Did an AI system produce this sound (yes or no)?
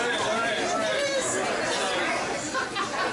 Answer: no